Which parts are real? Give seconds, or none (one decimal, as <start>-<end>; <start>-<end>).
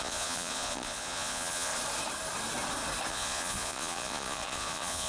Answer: 1.7-3.1